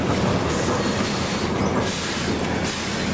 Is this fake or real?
real